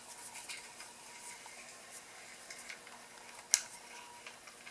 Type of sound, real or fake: real